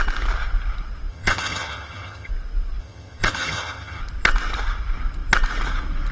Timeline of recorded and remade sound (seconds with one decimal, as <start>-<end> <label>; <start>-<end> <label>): 0.0-1.1 recorded; 1.1-2.3 remade; 2.3-2.8 recorded; 2.8-4.0 remade; 4.0-6.1 recorded